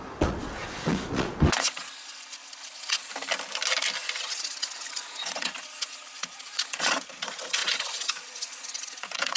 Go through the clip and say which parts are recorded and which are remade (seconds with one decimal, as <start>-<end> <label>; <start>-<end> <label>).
0.0-3.1 remade; 3.1-4.2 recorded; 4.2-9.4 remade